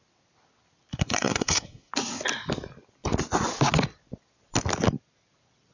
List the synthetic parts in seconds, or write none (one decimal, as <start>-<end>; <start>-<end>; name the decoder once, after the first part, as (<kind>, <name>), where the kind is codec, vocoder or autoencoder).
0.9-1.9 (codec, SNAC)